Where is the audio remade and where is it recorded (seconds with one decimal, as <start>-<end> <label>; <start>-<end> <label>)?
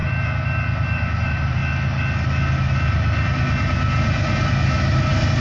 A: 0.0-1.2 recorded; 1.2-1.6 remade; 1.6-4.8 recorded; 4.8-5.4 remade